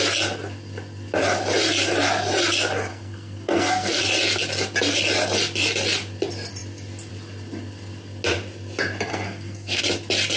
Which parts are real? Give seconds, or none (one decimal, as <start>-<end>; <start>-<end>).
0.0-2.9; 4.0-9.1; 9.8-10.4